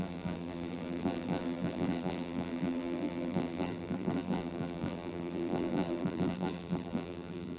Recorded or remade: remade